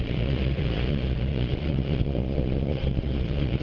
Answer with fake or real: fake